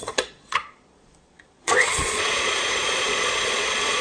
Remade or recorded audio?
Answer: remade